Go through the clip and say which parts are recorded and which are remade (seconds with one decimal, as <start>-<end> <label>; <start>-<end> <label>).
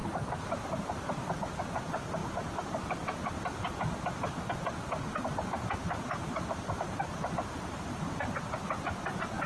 0.0-9.5 recorded